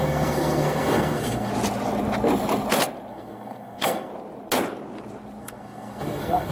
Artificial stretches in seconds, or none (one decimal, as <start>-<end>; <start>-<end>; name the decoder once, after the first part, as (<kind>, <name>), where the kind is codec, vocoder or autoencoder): 0.0-1.5 (codec, SNAC); 3.1-4.1; 5.4-6.5